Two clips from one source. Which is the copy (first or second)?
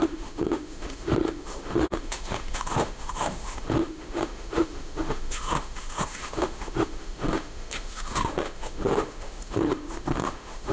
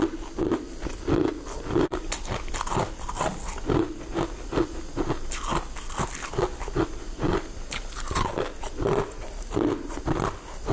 first